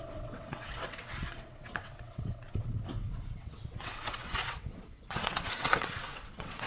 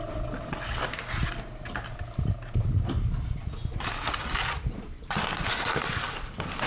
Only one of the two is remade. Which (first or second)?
first